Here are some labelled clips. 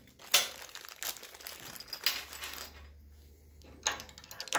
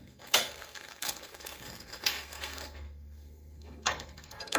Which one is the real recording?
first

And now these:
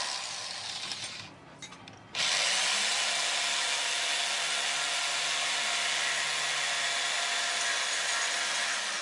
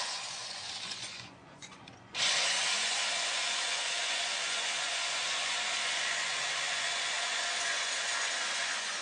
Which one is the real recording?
first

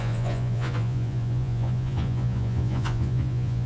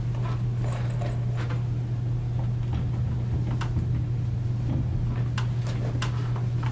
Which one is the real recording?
second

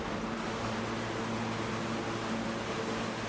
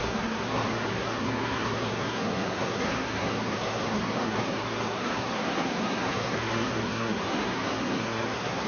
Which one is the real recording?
first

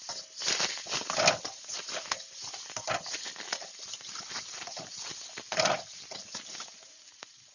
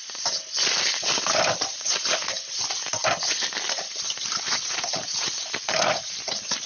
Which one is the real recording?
first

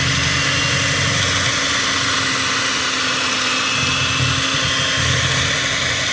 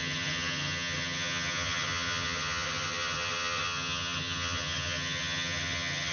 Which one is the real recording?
first